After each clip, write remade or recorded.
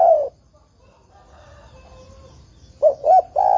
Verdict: recorded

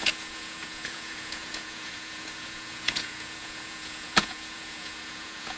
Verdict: remade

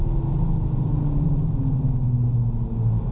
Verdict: recorded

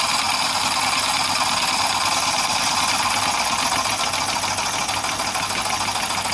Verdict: recorded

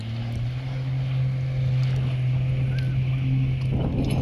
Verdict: recorded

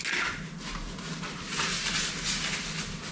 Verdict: recorded